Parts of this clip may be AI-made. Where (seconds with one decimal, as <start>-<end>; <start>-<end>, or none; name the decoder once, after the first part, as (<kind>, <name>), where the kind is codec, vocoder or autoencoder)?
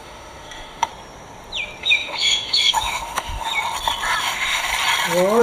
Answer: 0.0-0.9 (autoencoder, DAC-VAE); 1.8-3.5; 4.2-4.7